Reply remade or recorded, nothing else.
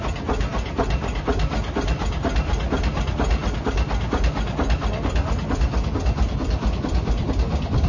recorded